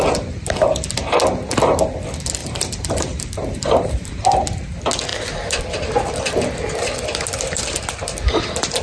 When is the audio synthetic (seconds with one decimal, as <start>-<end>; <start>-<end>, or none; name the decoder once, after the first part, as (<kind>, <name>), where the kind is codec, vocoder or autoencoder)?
2.4-4.1 (vocoder, BigVGAN v2)